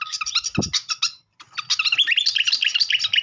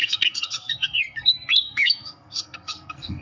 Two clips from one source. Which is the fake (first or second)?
second